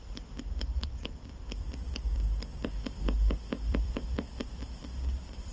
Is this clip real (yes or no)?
no